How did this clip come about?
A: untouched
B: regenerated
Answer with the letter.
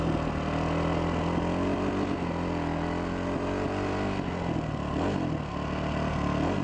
A